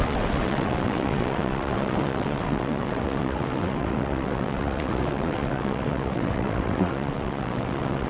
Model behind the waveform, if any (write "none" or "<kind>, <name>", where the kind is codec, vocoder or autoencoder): vocoder, WaveNeXt